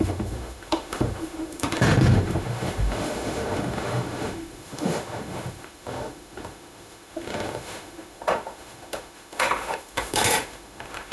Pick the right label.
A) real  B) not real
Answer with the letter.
B